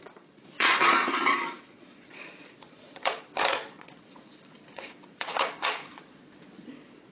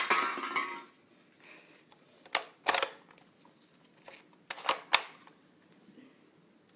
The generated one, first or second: first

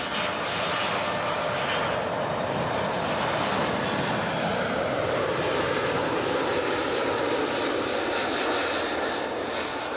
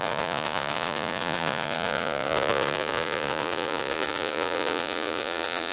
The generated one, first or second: second